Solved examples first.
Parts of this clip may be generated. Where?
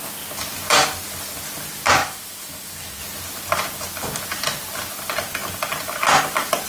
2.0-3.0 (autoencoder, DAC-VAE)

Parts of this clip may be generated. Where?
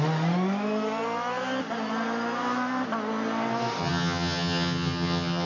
3.8-5.5 (vocoder, HiFi-GAN)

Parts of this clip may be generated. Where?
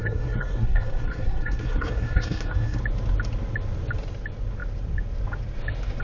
0.0-2.8 (codec, SNAC)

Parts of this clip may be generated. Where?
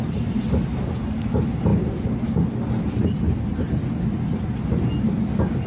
none